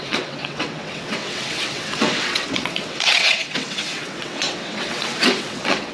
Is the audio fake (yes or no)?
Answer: yes